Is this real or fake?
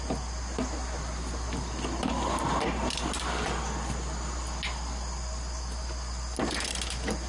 real